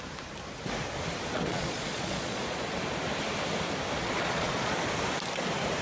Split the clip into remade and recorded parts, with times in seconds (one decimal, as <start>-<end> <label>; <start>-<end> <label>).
0.0-1.5 recorded; 1.5-2.8 remade; 2.8-4.0 recorded; 4.0-4.7 remade; 4.7-5.8 recorded